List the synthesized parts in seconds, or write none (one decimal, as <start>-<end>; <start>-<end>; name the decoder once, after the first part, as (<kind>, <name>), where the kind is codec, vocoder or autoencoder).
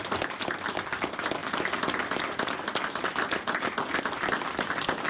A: 0.0-1.4 (vocoder, BigVGAN v2); 2.2-5.1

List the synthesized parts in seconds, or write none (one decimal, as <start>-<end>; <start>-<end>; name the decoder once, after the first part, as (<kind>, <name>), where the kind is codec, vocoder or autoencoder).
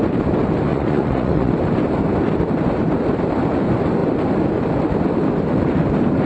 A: 0.7-1.5 (vocoder, Vocos)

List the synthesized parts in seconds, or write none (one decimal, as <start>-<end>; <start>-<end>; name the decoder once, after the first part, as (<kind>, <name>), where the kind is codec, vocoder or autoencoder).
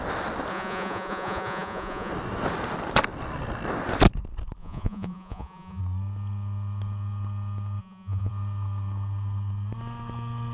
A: 0.5-2.1 (vocoder, Vocos); 4.6-5.8; 7.8-8.3